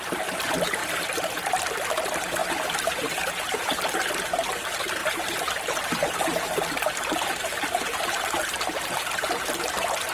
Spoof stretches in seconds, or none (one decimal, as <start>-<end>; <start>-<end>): 2.4-3.8; 5.0-8.0

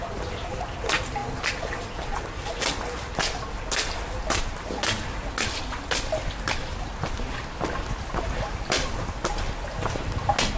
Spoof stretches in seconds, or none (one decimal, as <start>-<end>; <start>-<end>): 8.5-9.5

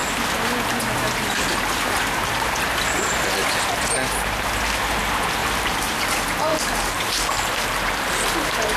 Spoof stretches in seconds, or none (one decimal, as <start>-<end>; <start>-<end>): 5.4-6.0; 6.5-8.3

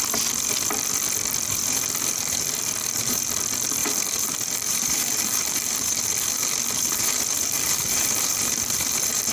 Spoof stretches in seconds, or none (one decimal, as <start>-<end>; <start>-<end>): 1.6-3.3; 3.8-9.3

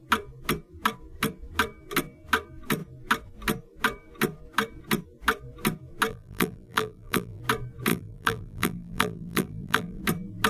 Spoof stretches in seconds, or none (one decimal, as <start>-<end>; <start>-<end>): 6.1-7.4; 7.9-10.0

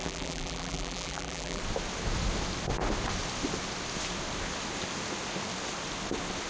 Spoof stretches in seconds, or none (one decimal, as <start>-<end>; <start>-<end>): 0.0-1.6

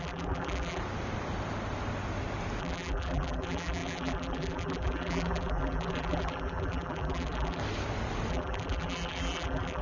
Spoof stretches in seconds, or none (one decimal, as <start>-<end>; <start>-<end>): 0.0-0.8; 2.6-7.6; 8.3-9.8